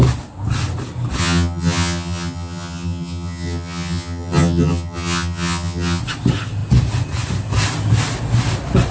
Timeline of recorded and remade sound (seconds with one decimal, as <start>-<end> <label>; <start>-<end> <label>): 0.0-1.2 recorded; 1.2-6.0 remade; 6.0-8.9 recorded